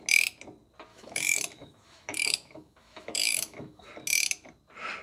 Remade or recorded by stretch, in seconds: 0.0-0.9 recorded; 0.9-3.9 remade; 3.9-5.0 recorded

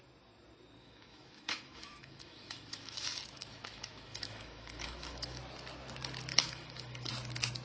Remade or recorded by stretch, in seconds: 0.0-0.8 recorded; 0.8-5.4 remade; 5.4-6.3 recorded; 6.3-7.1 remade; 7.1-7.6 recorded

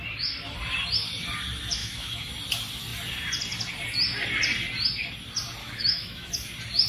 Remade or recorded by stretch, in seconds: 0.0-1.8 recorded; 1.8-2.3 remade; 2.3-5.6 recorded; 5.6-6.3 remade; 6.3-6.9 recorded

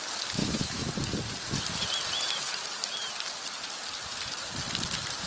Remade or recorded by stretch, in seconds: 0.0-0.4 recorded; 0.4-0.9 remade; 0.9-5.3 recorded

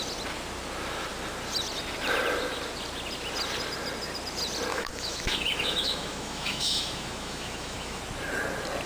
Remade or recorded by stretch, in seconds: 0.0-4.7 recorded; 4.7-8.0 remade; 8.0-8.9 recorded

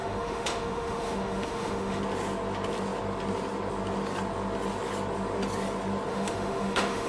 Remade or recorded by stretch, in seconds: 0.0-2.0 remade; 2.0-6.1 recorded; 6.1-7.1 remade

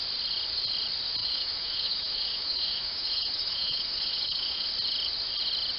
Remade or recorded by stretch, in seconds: 0.0-1.2 recorded; 1.2-4.7 remade; 4.7-5.8 recorded

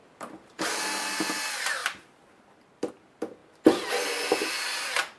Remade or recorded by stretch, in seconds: 0.0-5.2 recorded